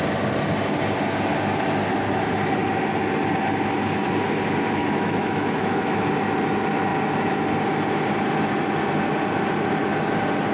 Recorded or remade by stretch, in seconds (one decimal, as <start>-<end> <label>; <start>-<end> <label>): 0.0-4.8 recorded; 4.8-6.1 remade; 6.1-10.5 recorded